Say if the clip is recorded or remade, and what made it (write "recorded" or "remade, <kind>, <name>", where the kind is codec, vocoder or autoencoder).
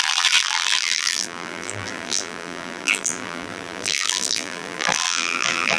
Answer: remade, vocoder, BigVGAN v2